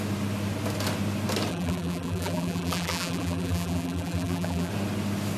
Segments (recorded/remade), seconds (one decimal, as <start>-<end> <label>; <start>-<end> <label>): 0.0-1.5 recorded; 1.5-4.7 remade; 4.7-5.4 recorded